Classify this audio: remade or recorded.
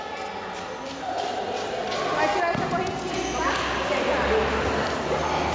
recorded